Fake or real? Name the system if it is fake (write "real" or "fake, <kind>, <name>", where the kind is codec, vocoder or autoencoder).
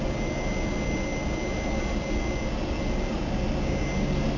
real